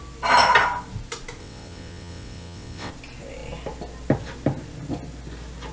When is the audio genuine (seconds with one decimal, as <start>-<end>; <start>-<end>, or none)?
0.0-1.4; 2.9-5.7